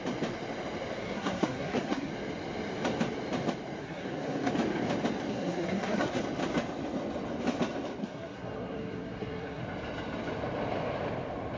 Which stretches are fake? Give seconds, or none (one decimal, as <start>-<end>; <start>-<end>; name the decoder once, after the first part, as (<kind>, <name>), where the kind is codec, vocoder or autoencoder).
1.0-2.1 (codec, SNAC); 3.8-4.5; 5.3-6.2; 8.0-9.6